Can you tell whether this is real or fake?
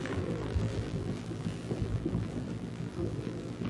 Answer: fake